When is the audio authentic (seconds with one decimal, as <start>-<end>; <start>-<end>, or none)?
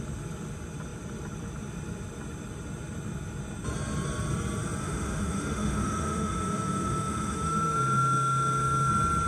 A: 0.0-4.8; 8.9-9.3